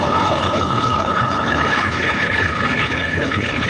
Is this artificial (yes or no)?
yes